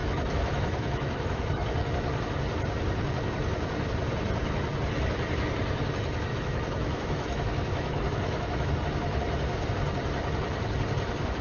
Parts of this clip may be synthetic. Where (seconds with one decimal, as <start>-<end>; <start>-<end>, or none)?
0.0-2.3; 6.3-8.7